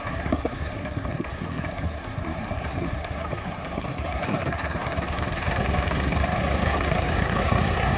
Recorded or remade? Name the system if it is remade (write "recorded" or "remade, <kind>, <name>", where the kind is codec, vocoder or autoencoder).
remade, codec, SNAC